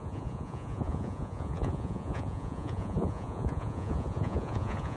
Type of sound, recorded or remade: remade